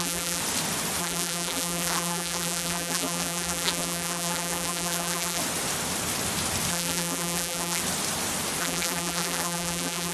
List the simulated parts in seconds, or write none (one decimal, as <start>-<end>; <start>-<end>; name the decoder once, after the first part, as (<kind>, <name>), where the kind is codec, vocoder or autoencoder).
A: 0.0-0.4 (vocoder, BigVGAN v2); 1.0-5.4; 6.7-7.8; 8.6-10.1